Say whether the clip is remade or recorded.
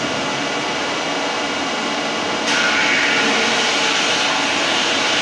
recorded